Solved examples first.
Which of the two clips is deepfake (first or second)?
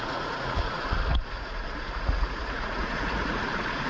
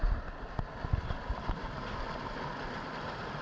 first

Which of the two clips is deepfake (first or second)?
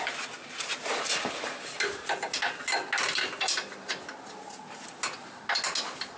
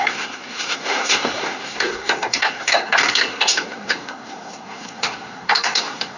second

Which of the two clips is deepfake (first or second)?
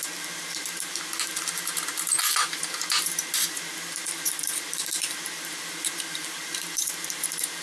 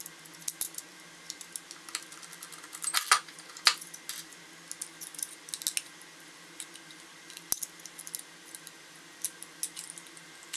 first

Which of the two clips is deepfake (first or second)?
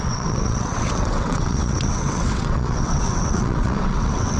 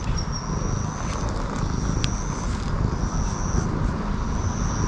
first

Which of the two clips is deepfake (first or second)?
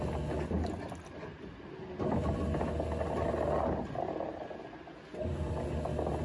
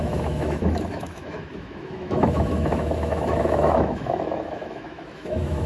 second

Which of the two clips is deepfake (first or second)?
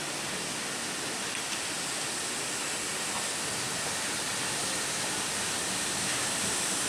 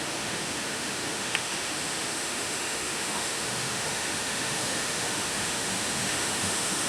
second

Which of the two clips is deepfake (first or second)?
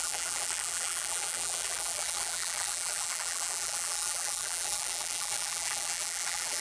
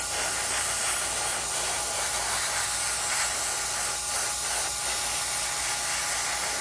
first